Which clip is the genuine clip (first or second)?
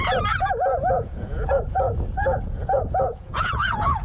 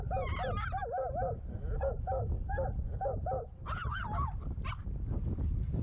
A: second